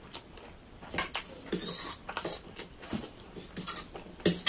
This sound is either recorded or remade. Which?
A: recorded